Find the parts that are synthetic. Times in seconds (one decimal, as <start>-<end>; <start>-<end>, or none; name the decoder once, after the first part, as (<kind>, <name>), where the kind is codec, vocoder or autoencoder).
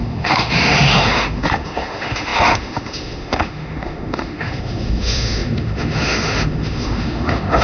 0.0-7.6 (autoencoder, DAC-VAE)